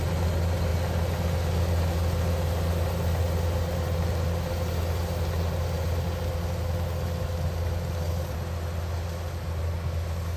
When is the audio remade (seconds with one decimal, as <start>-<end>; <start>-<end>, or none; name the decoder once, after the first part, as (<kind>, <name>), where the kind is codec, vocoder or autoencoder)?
none